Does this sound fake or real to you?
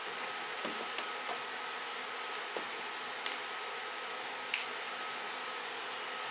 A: real